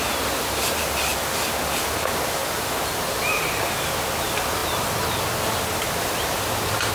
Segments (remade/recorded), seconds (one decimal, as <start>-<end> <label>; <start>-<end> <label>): 0.0-2.4 remade; 2.4-3.0 recorded; 3.0-6.9 remade